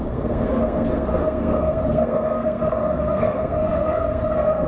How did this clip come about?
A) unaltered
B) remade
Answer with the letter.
B